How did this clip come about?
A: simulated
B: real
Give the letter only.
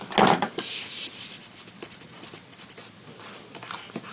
B